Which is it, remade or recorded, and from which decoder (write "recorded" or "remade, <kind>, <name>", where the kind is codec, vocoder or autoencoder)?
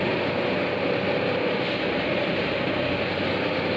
recorded